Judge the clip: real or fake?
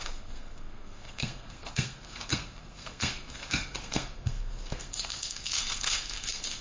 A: fake